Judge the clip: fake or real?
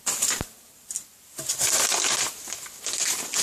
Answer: real